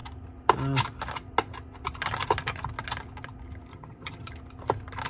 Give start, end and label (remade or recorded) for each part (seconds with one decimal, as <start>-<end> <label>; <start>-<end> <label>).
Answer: 0.0-3.7 recorded; 3.7-4.3 remade; 4.3-5.1 recorded